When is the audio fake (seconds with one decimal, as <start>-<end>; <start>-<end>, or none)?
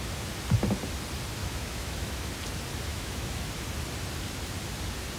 1.4-2.3; 2.9-3.4